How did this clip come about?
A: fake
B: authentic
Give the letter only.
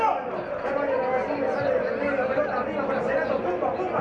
B